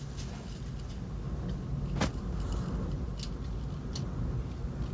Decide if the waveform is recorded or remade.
recorded